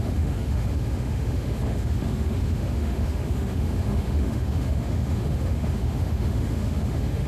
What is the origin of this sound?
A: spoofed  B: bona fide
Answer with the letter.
A